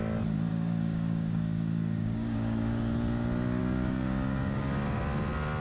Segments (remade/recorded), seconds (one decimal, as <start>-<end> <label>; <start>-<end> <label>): 0.0-0.5 recorded; 0.5-2.9 remade; 2.9-3.6 recorded; 3.6-5.0 remade; 5.0-5.6 recorded